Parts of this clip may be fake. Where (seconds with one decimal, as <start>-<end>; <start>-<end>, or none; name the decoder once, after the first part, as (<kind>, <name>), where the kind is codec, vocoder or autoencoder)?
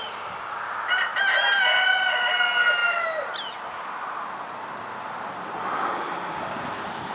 none